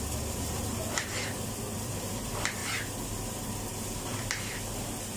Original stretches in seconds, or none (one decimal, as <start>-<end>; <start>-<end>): 2.6-5.2